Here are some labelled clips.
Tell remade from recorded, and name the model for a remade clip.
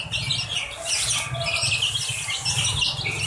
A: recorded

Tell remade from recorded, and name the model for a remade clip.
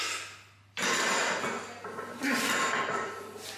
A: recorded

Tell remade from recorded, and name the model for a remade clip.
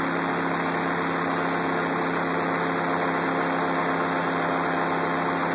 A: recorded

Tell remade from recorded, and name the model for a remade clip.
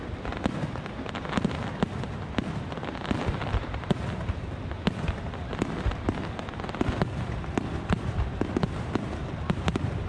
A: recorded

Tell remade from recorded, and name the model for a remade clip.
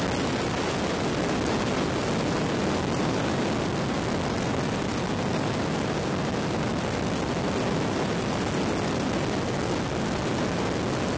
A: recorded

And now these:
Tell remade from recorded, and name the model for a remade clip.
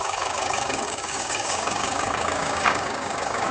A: remade, codec, DAC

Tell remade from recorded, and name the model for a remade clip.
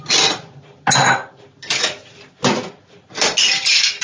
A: recorded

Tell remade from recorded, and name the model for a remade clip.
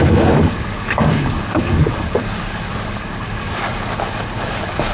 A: remade, codec, DAC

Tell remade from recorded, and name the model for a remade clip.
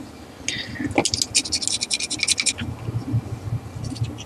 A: recorded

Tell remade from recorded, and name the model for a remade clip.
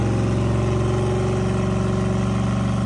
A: recorded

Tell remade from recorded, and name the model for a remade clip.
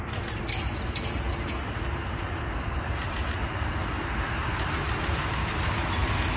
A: recorded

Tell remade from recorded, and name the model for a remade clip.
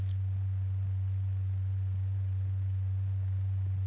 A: recorded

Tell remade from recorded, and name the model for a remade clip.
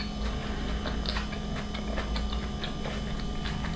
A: recorded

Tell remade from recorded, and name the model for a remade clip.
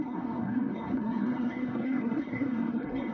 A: remade, codec, SNAC